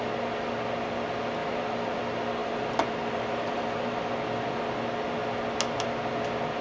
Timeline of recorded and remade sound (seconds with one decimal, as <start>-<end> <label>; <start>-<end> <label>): 0.0-1.4 recorded; 1.4-2.0 remade; 2.0-2.4 recorded; 2.4-4.1 remade; 4.1-6.6 recorded